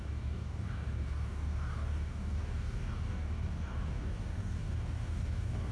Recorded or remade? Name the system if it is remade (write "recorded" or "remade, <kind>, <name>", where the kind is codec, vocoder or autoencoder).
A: remade, codec, DAC